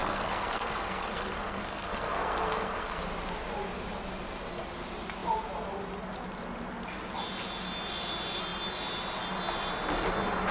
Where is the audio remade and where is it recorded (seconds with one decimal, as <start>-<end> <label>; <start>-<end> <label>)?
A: 0.0-3.0 remade; 3.0-10.5 recorded